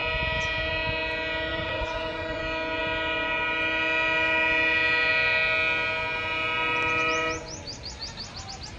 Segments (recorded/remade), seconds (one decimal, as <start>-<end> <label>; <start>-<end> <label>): 0.0-1.5 recorded; 1.5-2.4 remade; 2.4-8.8 recorded

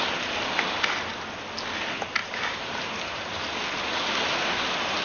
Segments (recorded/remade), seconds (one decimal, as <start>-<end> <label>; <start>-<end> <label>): 0.0-2.2 recorded; 2.2-3.6 remade; 3.6-5.0 recorded

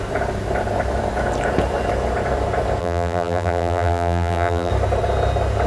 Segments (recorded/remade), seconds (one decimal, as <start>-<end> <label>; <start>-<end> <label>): 0.0-2.8 recorded; 2.8-4.7 remade; 4.7-5.7 recorded

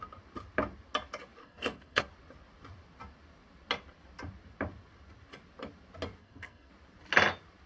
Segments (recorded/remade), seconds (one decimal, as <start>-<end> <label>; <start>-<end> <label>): 0.0-1.4 recorded; 1.4-2.0 remade; 2.0-6.2 recorded; 6.2-6.7 remade; 6.7-7.7 recorded

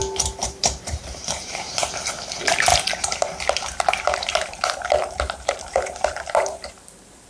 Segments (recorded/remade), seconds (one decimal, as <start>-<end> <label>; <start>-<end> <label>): 0.0-0.4 recorded; 0.4-1.8 remade; 1.8-2.7 recorded; 2.7-6.7 remade; 6.7-7.3 recorded

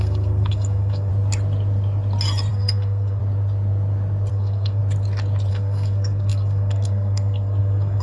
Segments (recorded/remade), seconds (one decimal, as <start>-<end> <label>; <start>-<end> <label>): 0.0-1.1 remade; 1.1-2.5 recorded; 2.5-3.2 remade; 3.2-4.3 recorded; 4.3-4.8 remade; 4.8-5.5 recorded; 5.5-8.0 remade

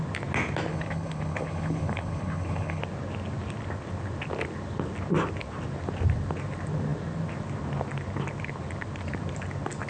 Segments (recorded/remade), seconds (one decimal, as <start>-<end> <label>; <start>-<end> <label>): 0.0-0.7 recorded; 0.7-2.8 remade; 2.8-9.9 recorded

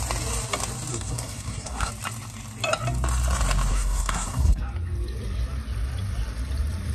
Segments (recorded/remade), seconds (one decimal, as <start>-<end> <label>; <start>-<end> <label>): 0.0-0.9 recorded; 0.9-1.9 remade; 1.9-3.7 recorded; 3.7-4.6 remade; 4.6-6.9 recorded